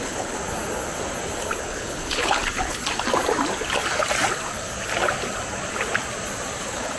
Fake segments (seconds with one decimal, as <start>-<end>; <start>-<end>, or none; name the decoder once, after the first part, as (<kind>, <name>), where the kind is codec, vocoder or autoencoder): 0.0-0.4 (codec, HILCodec); 1.6-2.8; 6.6-7.0